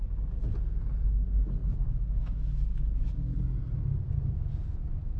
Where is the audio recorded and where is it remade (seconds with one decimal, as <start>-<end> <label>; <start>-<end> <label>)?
0.0-5.2 recorded